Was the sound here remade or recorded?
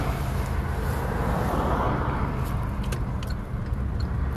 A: recorded